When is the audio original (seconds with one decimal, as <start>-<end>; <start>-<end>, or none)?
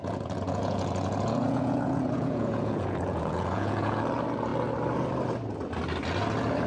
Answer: 4.0-6.7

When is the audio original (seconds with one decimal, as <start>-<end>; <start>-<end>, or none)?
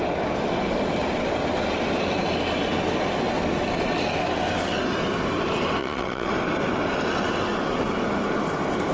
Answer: 0.0-5.8; 6.3-8.9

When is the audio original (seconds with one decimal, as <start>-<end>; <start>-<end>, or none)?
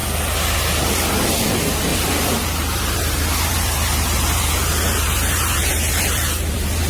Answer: 0.0-6.9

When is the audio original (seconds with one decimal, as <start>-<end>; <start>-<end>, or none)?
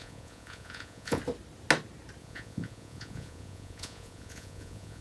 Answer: 1.2-2.2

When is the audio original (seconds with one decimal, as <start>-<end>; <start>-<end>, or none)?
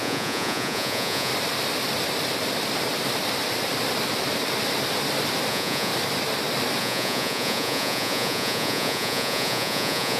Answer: 1.3-5.5; 5.9-6.8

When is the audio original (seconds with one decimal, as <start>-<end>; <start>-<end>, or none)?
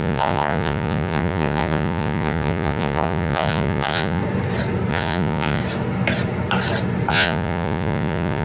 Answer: 4.2-4.9; 5.6-7.1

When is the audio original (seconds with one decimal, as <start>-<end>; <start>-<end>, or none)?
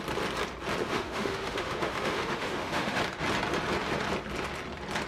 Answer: 0.0-0.8; 3.0-5.1